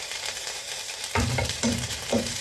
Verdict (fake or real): fake